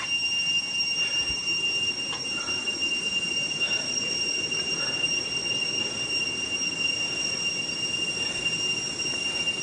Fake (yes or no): no